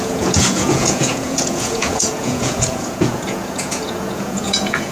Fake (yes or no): yes